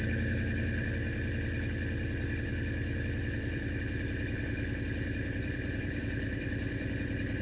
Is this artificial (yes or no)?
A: yes